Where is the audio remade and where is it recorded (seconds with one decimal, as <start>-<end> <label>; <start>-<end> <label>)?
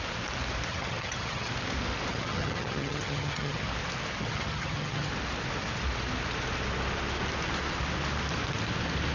0.0-0.7 recorded; 0.7-1.5 remade; 1.5-2.1 recorded; 2.1-3.7 remade; 3.7-4.2 recorded; 4.2-5.1 remade; 5.1-9.1 recorded